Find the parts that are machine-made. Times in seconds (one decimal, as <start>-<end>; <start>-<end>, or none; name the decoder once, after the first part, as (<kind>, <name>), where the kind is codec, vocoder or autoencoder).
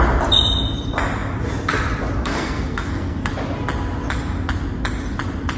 2.2-3.3 (codec, SNAC)